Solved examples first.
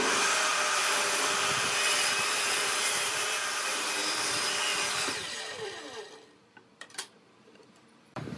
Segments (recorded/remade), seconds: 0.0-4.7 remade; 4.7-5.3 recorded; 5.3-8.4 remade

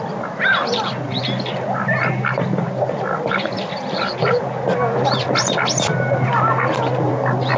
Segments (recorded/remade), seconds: 0.0-7.6 recorded